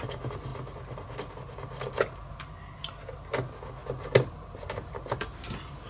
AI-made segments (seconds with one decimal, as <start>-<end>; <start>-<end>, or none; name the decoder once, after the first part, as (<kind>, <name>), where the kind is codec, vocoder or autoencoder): none